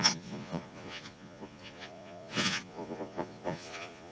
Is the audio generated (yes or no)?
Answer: yes